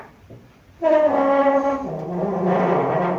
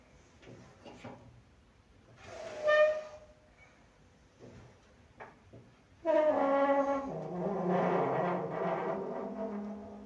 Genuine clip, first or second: second